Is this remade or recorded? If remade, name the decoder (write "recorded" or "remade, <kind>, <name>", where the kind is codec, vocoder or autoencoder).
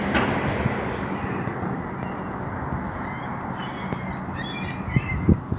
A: recorded